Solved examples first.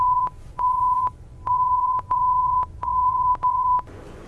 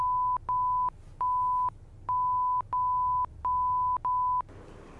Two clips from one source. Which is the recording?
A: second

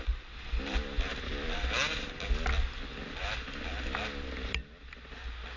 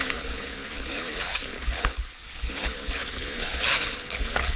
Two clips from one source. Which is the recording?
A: first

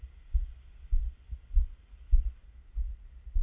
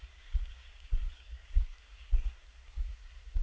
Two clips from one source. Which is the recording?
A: first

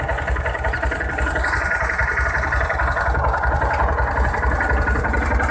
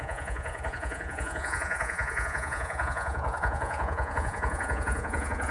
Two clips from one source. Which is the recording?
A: first